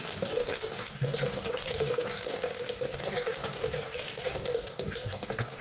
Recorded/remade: remade